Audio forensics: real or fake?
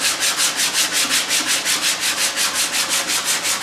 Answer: real